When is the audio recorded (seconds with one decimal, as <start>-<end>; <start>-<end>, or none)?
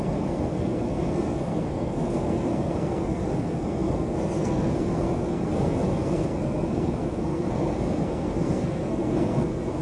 none